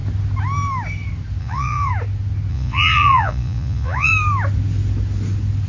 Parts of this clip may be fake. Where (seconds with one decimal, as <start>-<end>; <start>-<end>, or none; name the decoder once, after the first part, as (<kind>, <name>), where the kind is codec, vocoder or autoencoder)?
1.4-1.9 (vocoder, Vocos); 2.5-4.1